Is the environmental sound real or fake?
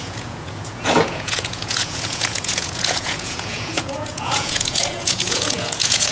fake